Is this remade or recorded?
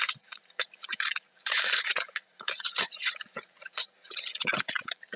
remade